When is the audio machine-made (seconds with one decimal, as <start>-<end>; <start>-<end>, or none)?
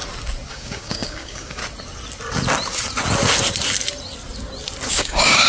0.5-1.6; 4.9-5.5